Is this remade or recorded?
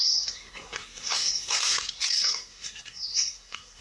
remade